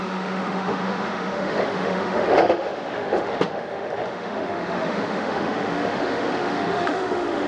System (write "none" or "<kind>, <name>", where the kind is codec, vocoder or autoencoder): autoencoder, DAC-VAE